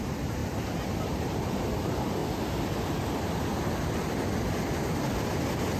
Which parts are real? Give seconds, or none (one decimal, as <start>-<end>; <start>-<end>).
0.4-1.0; 2.2-5.8